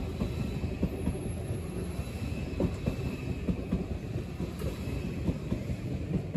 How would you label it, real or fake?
real